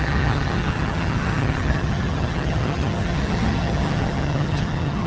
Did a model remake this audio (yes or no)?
yes